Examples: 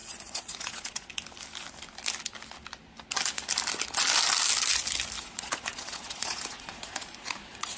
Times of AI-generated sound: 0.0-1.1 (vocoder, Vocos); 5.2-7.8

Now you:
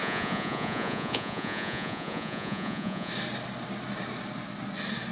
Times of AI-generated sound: 0.0-3.1 (vocoder, Vocos)

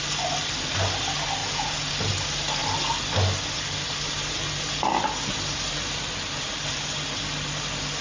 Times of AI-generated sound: 1.4-1.9 (vocoder, Vocos)

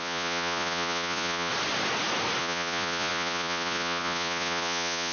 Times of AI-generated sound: 0.0-1.5 (vocoder, Vocos); 2.4-5.1

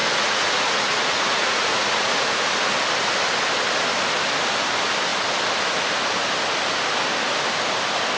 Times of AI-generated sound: 0.0-2.5 (vocoder, Vocos)

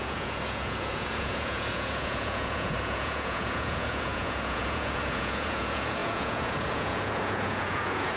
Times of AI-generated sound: 0.0-8.2 (vocoder, Vocos)

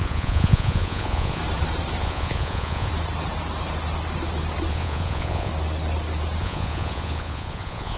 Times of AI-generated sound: 0.0-1.4 (vocoder, Vocos); 2.0-2.9; 4.7-5.5; 6.4-8.0